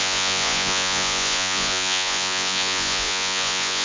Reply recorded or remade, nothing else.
remade